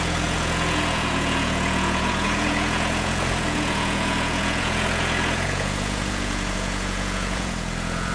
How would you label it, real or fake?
fake